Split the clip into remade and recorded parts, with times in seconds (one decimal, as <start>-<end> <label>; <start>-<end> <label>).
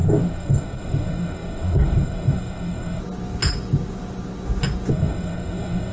0.0-3.0 remade; 3.0-4.9 recorded; 4.9-5.9 remade